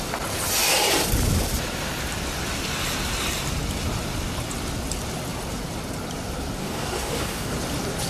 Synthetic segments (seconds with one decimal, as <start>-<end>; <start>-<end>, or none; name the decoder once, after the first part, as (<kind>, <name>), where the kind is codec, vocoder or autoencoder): 6.6-7.5 (codec, DAC)